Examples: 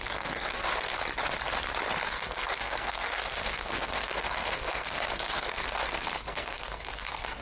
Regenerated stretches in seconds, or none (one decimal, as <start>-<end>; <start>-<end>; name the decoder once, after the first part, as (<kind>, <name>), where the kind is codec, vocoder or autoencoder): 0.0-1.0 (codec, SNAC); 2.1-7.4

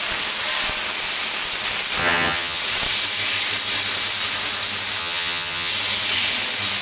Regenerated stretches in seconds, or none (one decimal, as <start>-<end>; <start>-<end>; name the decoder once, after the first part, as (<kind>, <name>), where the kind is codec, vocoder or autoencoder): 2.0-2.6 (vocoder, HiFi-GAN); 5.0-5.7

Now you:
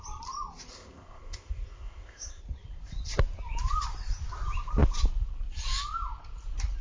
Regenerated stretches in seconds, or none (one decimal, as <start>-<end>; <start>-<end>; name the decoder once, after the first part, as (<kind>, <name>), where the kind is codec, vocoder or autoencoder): 0.7-2.4 (codec, ZipCodec)